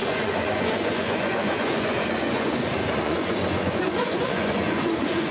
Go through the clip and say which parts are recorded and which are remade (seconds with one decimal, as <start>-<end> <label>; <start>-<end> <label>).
0.0-5.3 remade